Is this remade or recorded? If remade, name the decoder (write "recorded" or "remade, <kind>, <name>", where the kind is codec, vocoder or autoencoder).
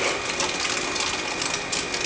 recorded